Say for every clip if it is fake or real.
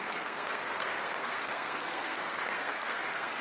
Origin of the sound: fake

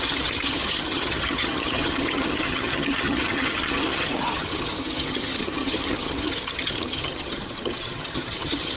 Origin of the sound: fake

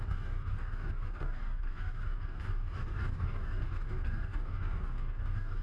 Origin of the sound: fake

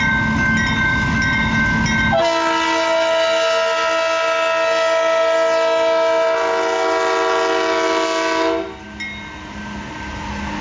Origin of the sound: real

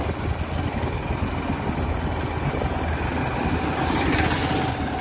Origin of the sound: real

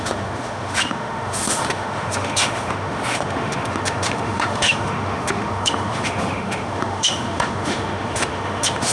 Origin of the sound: fake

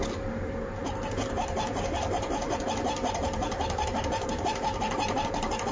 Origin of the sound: fake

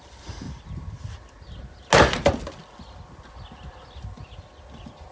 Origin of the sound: real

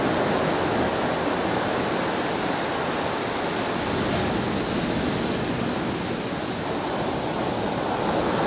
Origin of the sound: real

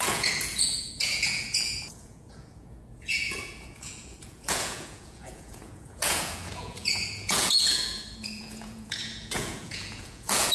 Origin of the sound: fake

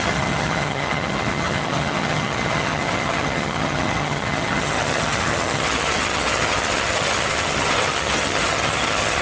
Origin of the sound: fake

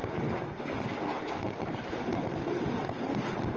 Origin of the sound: real